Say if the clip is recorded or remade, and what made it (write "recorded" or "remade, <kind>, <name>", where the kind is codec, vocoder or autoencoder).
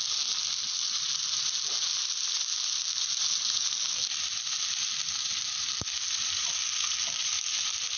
recorded